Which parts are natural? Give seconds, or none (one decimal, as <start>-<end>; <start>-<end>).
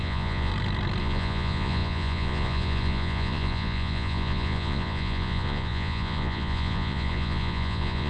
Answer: 0.5-1.0